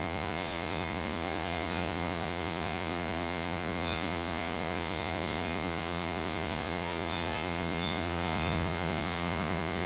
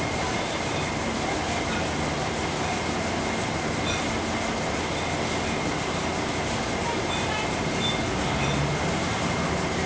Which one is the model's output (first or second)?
first